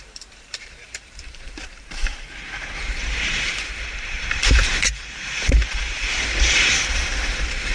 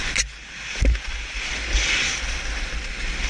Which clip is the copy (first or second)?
first